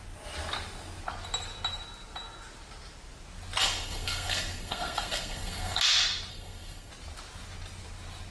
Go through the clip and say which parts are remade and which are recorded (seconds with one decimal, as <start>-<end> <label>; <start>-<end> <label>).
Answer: 0.0-3.6 recorded; 3.6-5.8 remade; 5.8-6.3 recorded; 6.3-6.9 remade; 6.9-8.3 recorded